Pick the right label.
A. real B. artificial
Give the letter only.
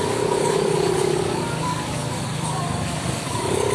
B